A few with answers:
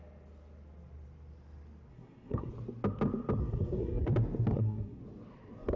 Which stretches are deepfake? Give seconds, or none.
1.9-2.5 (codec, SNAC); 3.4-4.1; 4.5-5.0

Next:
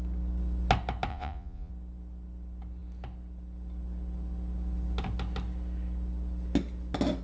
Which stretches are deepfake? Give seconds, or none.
1.1-1.7 (vocoder, Vocos)